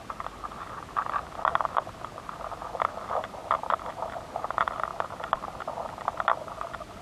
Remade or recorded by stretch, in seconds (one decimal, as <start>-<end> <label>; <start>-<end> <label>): 0.0-7.0 recorded